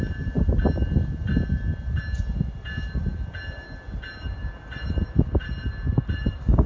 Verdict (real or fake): real